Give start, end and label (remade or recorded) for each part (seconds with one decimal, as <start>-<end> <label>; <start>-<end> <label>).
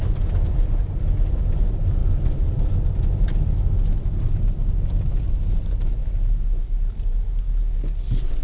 0.0-8.4 recorded